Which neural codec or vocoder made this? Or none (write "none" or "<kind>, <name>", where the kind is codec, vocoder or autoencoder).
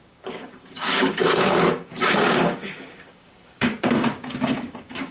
codec, DAC